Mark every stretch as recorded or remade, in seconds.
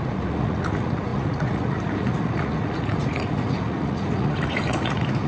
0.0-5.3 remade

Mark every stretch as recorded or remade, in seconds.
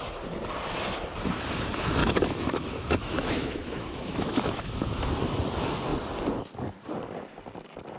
0.0-2.0 recorded; 2.0-5.1 remade; 5.1-8.0 recorded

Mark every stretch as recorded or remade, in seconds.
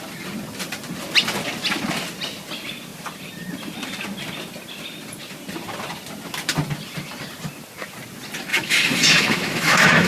0.0-8.5 recorded; 8.5-10.1 remade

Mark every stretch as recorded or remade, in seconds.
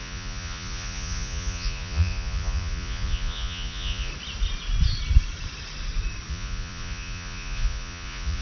0.0-4.1 remade; 4.1-6.3 recorded; 6.3-8.4 remade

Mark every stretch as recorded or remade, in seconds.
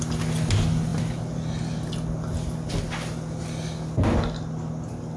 0.0-5.2 recorded